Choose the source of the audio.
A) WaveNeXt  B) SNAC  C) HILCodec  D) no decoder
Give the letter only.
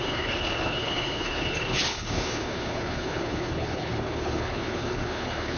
C